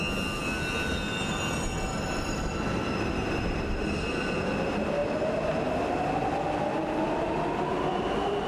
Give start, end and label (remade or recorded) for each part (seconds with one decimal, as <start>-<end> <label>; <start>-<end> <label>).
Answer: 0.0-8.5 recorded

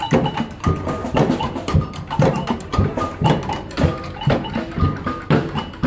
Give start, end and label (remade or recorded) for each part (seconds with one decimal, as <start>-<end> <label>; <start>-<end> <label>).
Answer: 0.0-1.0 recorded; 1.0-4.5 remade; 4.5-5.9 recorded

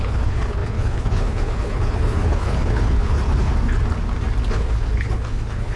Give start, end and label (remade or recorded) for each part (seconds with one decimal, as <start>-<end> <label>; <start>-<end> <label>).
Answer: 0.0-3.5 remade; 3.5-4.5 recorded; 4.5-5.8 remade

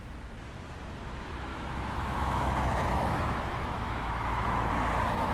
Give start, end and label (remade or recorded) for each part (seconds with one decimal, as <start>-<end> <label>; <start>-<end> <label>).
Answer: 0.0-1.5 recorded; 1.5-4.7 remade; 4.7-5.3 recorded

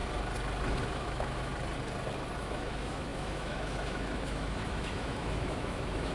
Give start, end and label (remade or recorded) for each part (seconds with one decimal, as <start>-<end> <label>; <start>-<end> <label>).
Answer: 0.0-0.9 recorded; 0.9-1.5 remade; 1.5-2.4 recorded; 2.4-6.1 remade